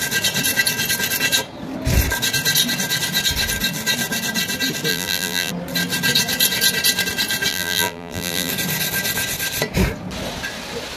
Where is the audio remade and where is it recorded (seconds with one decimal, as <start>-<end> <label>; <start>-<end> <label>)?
0.0-4.9 recorded; 4.9-5.5 remade; 5.5-7.5 recorded; 7.5-8.5 remade; 8.5-11.0 recorded